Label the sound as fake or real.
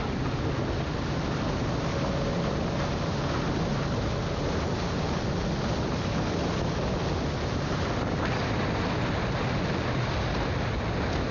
real